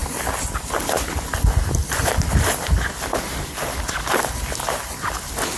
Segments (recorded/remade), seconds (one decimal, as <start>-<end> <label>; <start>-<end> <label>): 0.0-5.6 recorded